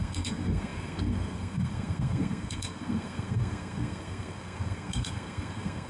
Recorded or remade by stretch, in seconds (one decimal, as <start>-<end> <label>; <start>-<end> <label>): 0.0-5.9 remade